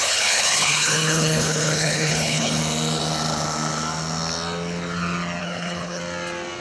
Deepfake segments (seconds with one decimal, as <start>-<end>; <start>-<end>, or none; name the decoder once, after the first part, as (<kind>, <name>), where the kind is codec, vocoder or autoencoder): 0.0-2.6 (codec, HILCodec); 5.4-6.0